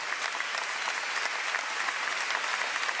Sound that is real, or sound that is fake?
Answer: real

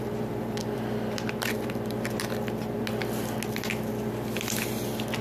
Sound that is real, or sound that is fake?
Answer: real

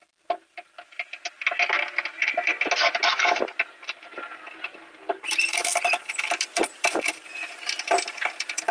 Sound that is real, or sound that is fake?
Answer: real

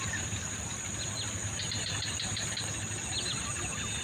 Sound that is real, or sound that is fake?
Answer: real